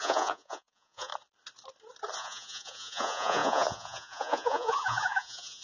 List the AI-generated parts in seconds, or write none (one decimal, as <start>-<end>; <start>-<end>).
0.0-1.1; 2.2-5.6